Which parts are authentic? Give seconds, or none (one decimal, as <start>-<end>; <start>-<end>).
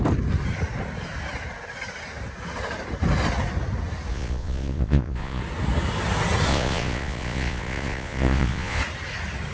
0.0-4.1; 5.4-6.5; 8.8-9.5